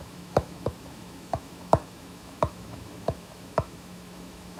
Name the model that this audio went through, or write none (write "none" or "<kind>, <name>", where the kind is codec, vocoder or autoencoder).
autoencoder, DAC-VAE